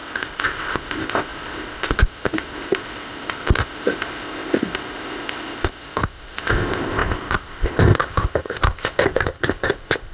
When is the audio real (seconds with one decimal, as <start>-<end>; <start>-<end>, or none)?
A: none